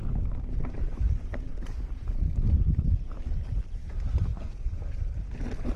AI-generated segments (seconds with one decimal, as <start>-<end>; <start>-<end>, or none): 4.3-5.0